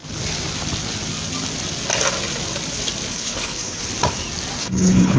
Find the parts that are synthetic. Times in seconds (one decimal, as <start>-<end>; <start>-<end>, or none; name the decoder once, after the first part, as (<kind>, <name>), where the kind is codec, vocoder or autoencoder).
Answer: 3.1-3.8 (codec, HILCodec); 4.6-5.2